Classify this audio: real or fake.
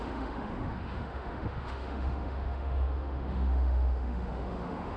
fake